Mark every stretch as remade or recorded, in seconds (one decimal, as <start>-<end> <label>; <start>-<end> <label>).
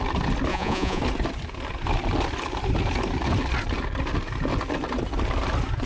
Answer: 0.0-0.5 recorded; 0.5-1.0 remade; 1.0-5.9 recorded